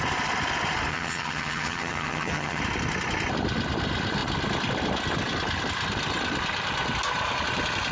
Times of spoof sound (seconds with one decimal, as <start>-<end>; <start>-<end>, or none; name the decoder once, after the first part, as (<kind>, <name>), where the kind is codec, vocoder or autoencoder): 0.9-2.6 (vocoder, HiFi-GAN)